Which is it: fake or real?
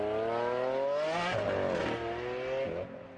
real